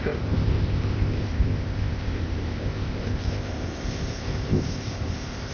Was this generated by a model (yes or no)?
yes